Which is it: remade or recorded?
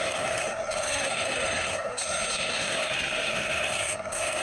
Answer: remade